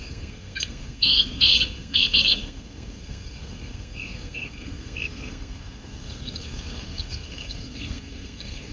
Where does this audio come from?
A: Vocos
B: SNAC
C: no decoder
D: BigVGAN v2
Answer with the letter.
B